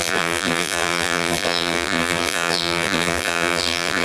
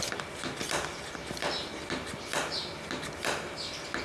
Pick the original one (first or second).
second